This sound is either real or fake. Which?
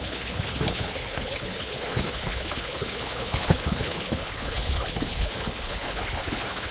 fake